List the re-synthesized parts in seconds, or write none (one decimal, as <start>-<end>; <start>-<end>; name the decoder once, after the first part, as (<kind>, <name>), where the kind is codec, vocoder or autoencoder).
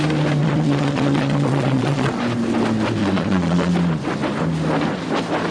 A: 0.4-2.2 (vocoder, Vocos); 3.0-3.7